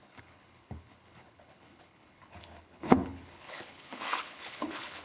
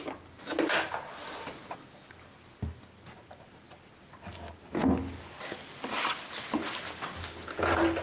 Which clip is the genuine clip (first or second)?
second